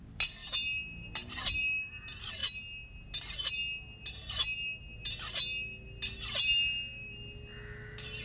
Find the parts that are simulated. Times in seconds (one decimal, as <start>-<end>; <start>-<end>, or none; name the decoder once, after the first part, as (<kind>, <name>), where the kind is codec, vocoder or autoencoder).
none